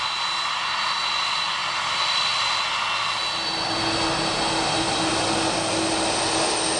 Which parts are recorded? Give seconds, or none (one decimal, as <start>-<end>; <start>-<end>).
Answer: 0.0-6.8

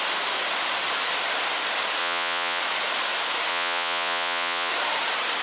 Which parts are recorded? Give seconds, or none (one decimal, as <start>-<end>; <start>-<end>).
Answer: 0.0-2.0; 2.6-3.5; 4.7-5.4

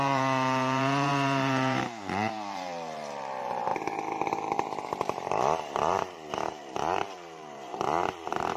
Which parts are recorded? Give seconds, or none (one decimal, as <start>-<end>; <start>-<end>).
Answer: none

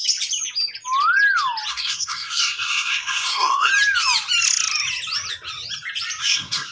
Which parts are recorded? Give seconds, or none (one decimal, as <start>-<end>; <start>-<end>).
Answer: 0.0-1.7; 3.7-6.2